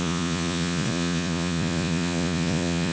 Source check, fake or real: fake